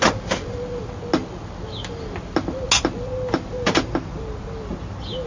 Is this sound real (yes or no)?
yes